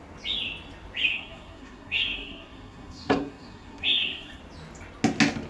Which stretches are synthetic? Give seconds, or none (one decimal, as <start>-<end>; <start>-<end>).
1.1-4.4